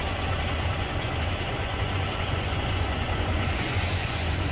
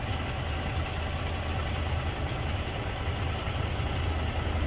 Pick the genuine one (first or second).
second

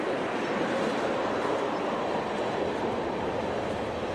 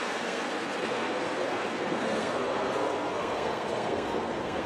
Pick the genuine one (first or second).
first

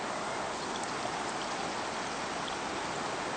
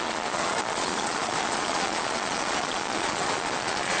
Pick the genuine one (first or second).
first